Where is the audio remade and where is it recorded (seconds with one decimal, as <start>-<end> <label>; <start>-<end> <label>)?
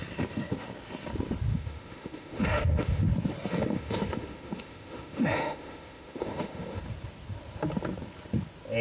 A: 0.0-1.5 recorded; 1.5-3.1 remade; 3.1-3.5 recorded; 3.5-6.8 remade; 6.8-8.8 recorded